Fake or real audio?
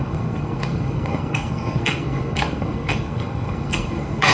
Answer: fake